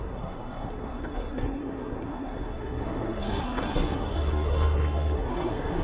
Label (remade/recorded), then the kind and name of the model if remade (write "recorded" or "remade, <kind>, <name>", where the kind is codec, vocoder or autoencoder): remade, codec, SNAC